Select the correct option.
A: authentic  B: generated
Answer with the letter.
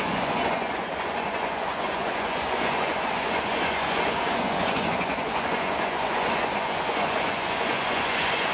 B